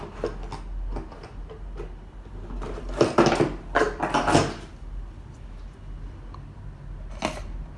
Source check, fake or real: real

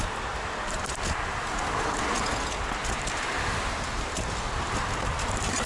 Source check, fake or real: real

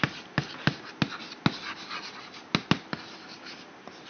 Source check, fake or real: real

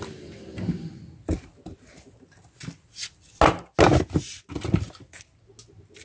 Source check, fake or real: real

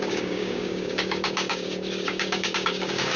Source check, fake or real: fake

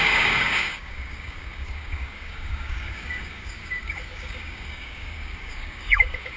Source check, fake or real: fake